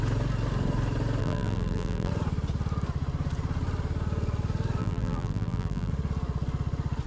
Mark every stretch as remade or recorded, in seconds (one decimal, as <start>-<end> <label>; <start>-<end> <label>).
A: 0.0-1.2 recorded; 1.2-2.1 remade; 2.1-4.8 recorded; 4.8-5.9 remade; 5.9-7.1 recorded